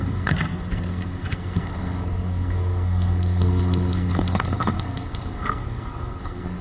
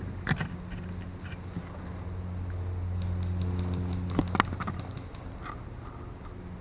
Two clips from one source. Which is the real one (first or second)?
second